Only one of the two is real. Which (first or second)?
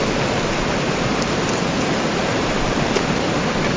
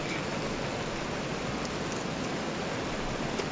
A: second